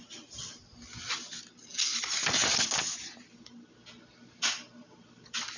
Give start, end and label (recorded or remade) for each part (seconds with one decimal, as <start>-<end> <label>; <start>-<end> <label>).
0.0-0.6 remade; 0.6-1.4 recorded; 1.4-2.4 remade; 2.4-5.1 recorded; 5.1-5.6 remade